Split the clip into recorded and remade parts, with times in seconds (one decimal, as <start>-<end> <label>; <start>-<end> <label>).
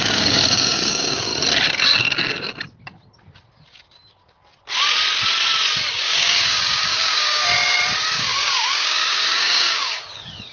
0.0-1.3 remade; 1.3-5.9 recorded; 5.9-7.4 remade; 7.4-8.2 recorded; 8.2-10.5 remade